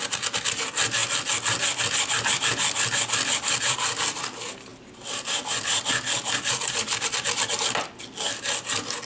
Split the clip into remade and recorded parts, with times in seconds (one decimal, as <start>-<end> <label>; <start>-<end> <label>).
0.0-9.0 recorded